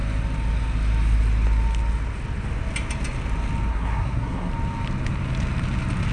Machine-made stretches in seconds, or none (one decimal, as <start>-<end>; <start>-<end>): 3.7-4.5